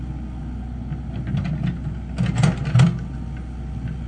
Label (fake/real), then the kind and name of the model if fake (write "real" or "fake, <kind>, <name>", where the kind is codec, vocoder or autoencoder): real